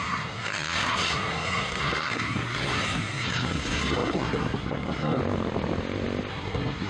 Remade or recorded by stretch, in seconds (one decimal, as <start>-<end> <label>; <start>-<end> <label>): 0.0-5.2 remade; 5.2-6.3 recorded; 6.3-6.9 remade